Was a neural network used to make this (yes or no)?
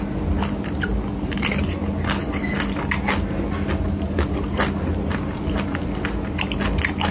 no